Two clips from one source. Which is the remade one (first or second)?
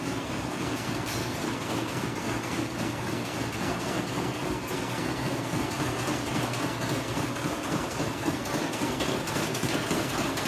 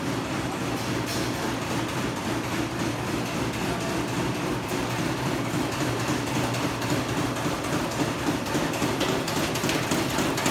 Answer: first